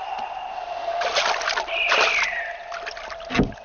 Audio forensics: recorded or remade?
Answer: recorded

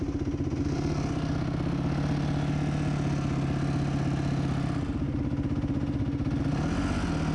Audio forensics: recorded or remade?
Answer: recorded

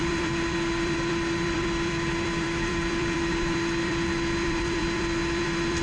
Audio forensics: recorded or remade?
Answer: remade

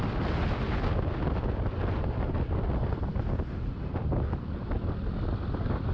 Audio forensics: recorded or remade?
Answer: recorded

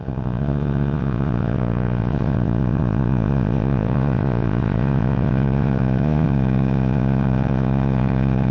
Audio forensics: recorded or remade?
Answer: remade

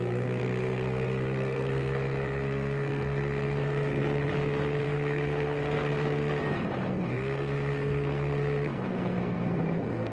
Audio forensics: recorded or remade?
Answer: remade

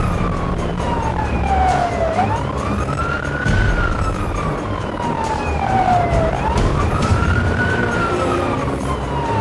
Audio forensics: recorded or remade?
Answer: remade